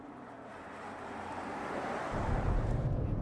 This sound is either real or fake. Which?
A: fake